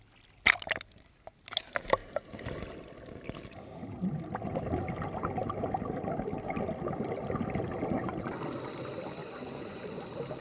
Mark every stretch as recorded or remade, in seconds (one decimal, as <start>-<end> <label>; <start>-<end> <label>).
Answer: 0.0-9.2 recorded; 9.2-10.0 remade; 10.0-10.4 recorded